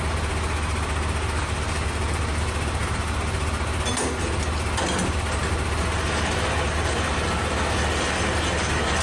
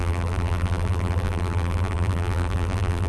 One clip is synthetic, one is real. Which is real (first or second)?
first